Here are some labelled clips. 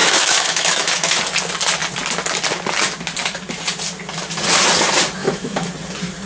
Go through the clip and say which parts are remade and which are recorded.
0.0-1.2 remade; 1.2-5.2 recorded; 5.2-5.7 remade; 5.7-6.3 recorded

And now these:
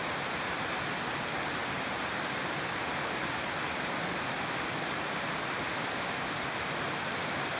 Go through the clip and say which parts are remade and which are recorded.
0.0-7.6 recorded

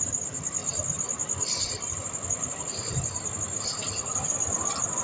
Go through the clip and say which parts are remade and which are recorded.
0.0-5.0 recorded

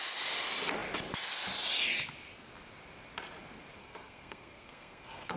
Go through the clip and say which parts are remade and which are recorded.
0.0-3.8 recorded; 3.8-5.4 remade

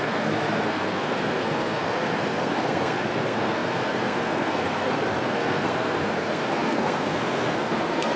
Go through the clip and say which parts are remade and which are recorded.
0.0-8.2 remade

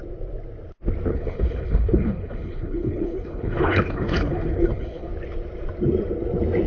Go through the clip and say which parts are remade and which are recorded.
0.0-1.1 recorded; 1.1-5.1 remade; 5.1-6.7 recorded

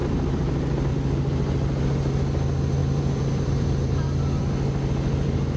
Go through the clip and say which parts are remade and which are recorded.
0.0-0.9 remade; 0.9-2.8 recorded; 2.8-4.4 remade; 4.4-5.6 recorded